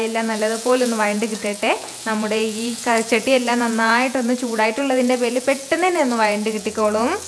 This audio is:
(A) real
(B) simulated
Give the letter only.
B